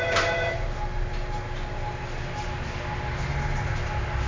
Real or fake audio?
real